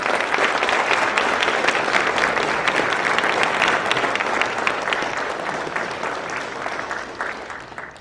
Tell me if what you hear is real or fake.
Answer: real